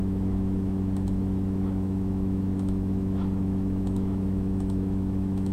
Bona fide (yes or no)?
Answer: no